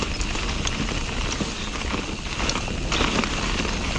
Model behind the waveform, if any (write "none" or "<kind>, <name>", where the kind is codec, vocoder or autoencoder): none